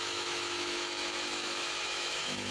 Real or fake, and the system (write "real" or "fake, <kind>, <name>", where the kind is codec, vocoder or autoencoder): fake, autoencoder, DAC-VAE